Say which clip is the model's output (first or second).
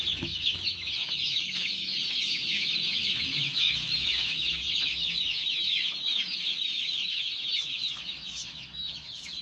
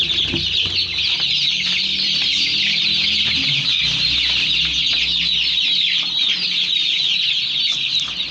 first